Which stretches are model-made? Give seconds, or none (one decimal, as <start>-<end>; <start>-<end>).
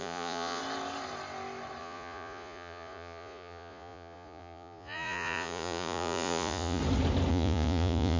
0.0-0.6; 1.8-6.8; 7.3-8.2